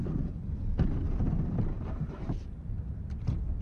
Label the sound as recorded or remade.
recorded